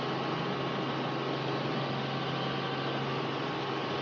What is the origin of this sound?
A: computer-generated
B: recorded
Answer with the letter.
B